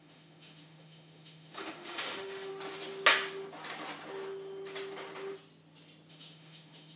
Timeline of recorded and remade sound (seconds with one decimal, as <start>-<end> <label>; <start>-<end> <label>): 0.0-2.5 remade; 2.5-6.1 recorded; 6.1-7.0 remade